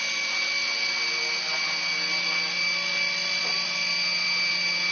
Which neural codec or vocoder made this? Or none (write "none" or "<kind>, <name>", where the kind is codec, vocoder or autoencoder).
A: none